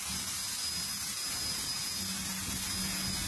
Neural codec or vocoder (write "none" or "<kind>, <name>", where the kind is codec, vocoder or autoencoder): none